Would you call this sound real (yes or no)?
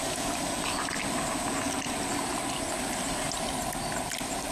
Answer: yes